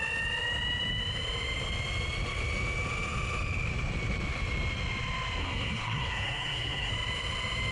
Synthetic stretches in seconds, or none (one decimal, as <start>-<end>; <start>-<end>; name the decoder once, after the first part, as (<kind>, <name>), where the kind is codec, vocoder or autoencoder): 5.4-6.9 (codec, SNAC)